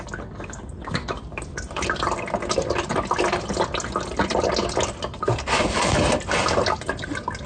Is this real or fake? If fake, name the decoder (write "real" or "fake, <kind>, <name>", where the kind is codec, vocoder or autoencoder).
real